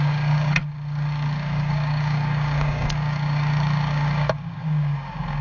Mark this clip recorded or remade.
remade